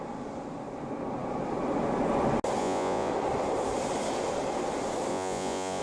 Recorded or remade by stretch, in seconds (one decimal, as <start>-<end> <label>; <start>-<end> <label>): 0.0-2.6 recorded; 2.6-3.1 remade; 3.1-5.1 recorded; 5.1-5.8 remade